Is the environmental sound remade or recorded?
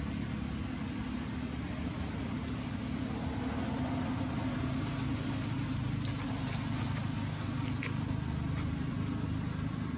recorded